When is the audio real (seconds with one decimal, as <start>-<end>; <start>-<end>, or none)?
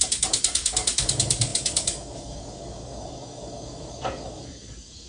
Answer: none